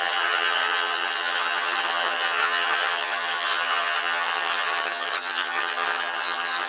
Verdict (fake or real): fake